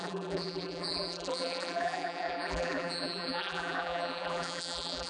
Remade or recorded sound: remade